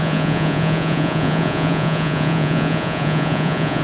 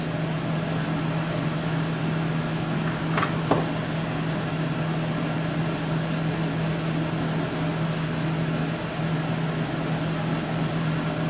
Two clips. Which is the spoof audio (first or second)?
first